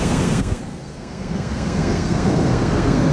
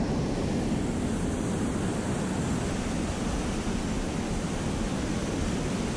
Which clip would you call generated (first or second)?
first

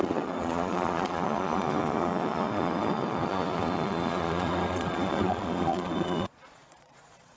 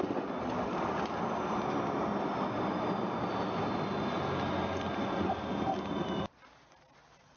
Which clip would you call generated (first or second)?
first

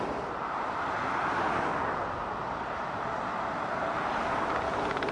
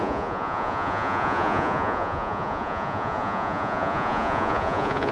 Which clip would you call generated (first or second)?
second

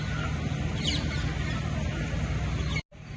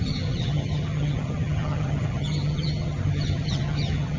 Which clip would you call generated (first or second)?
second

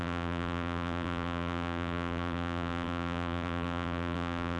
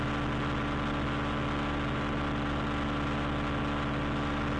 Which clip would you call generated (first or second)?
first